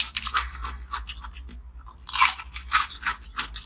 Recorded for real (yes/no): yes